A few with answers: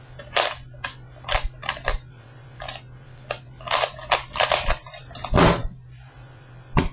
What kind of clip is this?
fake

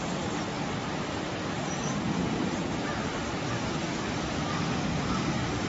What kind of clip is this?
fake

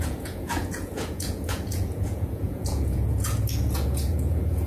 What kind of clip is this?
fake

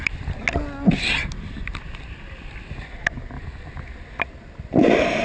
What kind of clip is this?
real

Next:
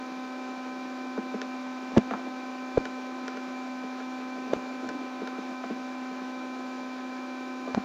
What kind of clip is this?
fake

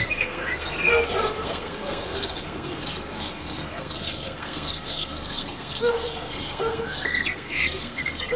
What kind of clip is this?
fake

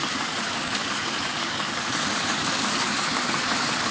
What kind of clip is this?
fake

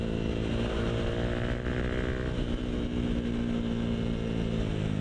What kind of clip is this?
real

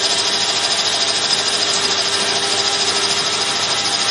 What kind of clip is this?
real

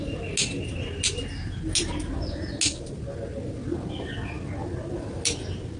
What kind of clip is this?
real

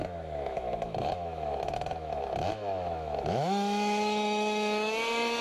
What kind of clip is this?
fake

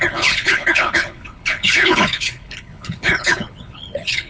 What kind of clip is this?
fake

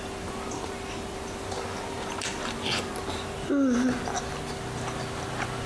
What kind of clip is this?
real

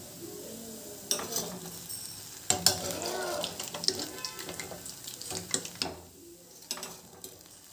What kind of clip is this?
real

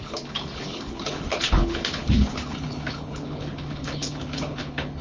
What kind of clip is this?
fake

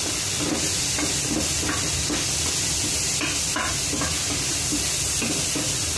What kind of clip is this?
real